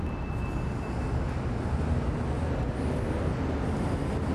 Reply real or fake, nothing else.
real